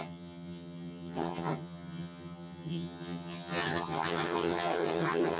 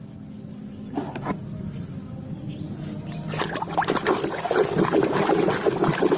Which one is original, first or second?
second